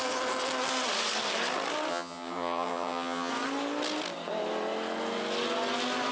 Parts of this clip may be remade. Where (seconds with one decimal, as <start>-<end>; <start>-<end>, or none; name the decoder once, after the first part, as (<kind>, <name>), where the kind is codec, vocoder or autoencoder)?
1.9-3.3 (vocoder, HiFi-GAN)